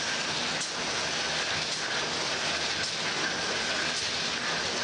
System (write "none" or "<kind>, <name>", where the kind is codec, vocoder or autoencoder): none